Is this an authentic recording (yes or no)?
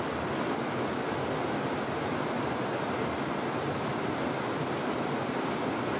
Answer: yes